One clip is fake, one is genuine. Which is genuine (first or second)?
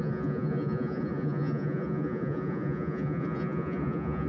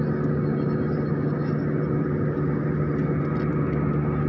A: second